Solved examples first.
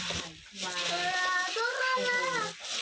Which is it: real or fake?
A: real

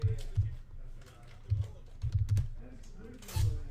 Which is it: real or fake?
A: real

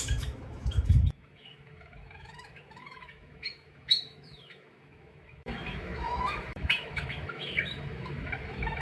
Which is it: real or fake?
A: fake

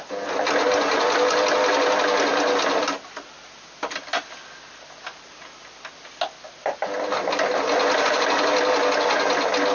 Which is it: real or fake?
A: real